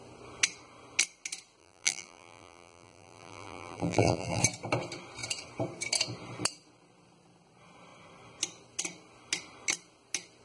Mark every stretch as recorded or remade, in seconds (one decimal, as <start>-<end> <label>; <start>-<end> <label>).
0.0-1.6 recorded; 1.6-4.4 remade; 4.4-10.4 recorded